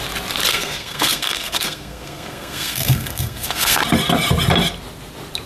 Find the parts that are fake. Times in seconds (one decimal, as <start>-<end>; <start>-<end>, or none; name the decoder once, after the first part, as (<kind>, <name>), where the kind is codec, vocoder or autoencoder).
0.5-3.8 (codec, SNAC)

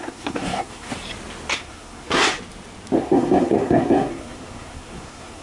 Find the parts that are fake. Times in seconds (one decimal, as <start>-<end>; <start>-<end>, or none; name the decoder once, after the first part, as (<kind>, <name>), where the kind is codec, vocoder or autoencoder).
0.0-0.9 (codec, SNAC); 1.5-2.2; 3.0-5.4

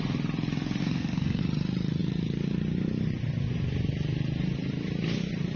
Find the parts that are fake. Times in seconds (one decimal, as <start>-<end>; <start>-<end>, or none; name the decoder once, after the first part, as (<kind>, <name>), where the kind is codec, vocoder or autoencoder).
0.8-1.4 (codec, SNAC)

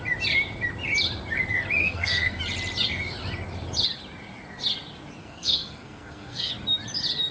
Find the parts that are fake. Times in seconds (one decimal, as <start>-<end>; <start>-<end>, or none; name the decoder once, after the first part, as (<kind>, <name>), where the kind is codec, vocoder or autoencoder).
1.8-2.4 (codec, SNAC); 5.2-6.5

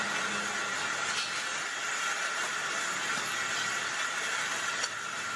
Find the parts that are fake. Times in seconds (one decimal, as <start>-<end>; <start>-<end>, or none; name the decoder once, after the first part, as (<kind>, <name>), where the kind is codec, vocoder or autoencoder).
none

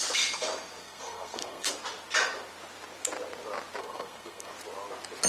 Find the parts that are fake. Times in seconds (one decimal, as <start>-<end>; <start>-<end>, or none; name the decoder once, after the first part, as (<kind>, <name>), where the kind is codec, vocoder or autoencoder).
0.8-1.7 (codec, SNAC); 3.8-4.5

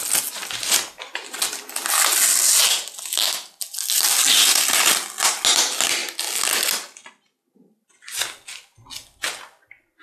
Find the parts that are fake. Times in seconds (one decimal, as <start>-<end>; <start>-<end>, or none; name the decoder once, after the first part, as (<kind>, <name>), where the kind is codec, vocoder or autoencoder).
none

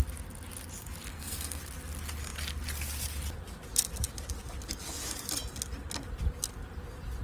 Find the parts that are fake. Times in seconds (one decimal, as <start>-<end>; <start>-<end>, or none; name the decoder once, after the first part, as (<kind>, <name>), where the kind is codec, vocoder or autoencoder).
1.1-1.6 (codec, SNAC)